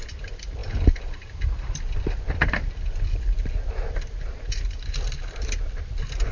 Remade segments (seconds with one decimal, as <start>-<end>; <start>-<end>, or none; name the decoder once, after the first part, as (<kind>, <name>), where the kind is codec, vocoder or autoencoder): 0.6-4.3 (vocoder, BigVGAN v2)